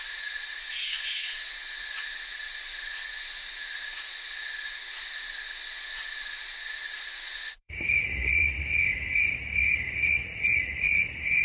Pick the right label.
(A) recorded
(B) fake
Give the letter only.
B